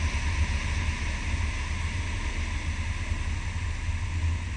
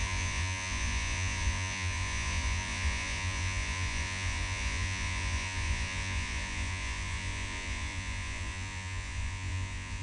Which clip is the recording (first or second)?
first